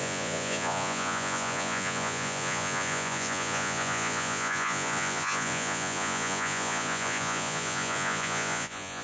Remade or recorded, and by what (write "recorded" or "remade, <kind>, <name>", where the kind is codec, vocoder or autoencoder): remade, vocoder, Vocos